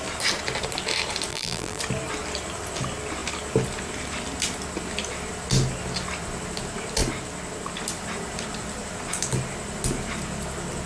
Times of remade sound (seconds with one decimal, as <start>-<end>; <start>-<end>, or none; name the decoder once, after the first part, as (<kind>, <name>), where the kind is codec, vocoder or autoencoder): 1.3-1.8 (vocoder, BigVGAN v2)